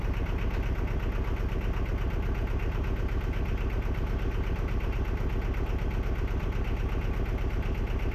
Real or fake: real